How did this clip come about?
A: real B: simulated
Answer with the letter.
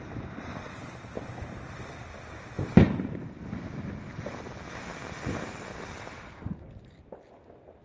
A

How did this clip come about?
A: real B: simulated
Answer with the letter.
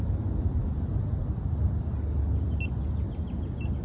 A